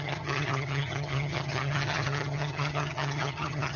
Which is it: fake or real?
fake